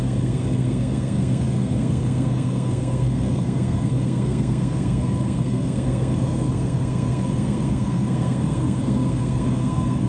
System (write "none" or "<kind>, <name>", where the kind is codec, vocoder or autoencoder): codec, SNAC